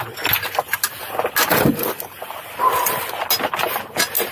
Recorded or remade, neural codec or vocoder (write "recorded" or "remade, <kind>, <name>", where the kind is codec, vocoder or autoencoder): recorded